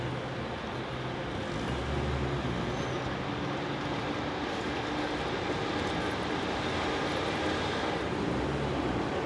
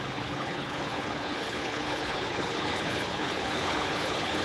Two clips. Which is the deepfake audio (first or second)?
second